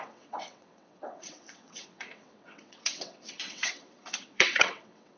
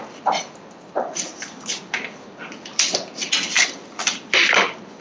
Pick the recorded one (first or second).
second